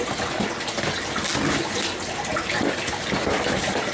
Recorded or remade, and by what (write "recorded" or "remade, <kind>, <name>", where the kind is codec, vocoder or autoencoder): recorded